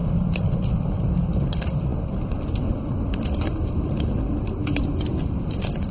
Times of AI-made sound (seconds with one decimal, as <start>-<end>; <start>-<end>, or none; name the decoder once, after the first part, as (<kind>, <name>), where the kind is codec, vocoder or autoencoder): 0.0-1.0 (vocoder, BigVGAN v2); 1.9-3.8; 5.1-5.9